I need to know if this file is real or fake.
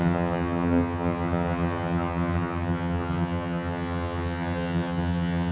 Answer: fake